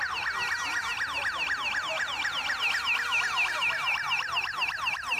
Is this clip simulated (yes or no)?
no